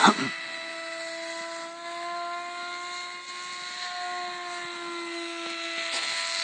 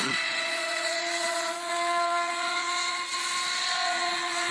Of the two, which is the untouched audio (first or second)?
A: first